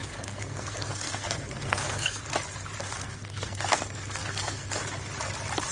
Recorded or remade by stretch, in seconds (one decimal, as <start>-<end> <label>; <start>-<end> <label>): 0.0-2.2 remade; 2.2-2.8 recorded; 2.8-4.8 remade; 4.8-5.7 recorded